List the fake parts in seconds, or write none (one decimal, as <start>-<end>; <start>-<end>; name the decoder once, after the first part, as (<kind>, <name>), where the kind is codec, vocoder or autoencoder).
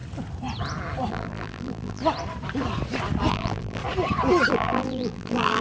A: 1.1-2.0 (vocoder, BigVGAN v2); 3.3-3.8; 4.5-5.6